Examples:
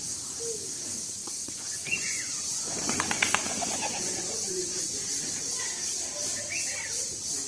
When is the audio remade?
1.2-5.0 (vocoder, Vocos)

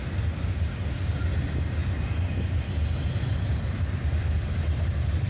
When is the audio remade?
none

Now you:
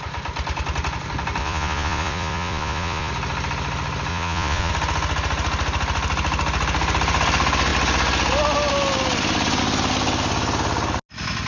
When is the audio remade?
1.4-3.1 (vocoder, Vocos); 4.1-4.7

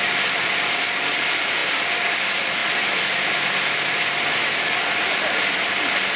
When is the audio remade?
none